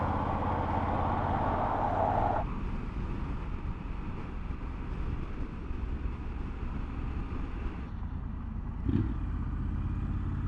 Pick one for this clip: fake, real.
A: real